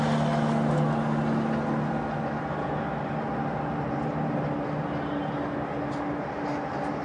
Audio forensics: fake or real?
real